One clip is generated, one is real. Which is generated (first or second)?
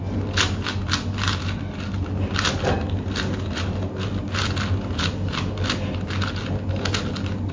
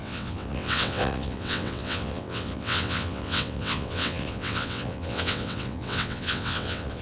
second